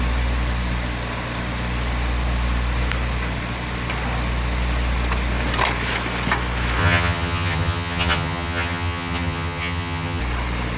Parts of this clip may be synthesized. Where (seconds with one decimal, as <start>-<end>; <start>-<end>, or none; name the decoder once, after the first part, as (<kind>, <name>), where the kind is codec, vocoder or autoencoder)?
6.8-10.2 (vocoder, HiFi-GAN)